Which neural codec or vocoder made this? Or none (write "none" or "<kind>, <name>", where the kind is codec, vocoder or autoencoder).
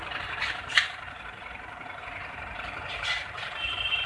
vocoder, BigVGAN v2